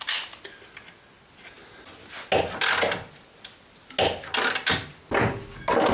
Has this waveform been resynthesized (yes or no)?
no